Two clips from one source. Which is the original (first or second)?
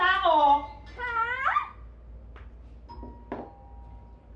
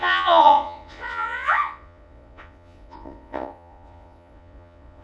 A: first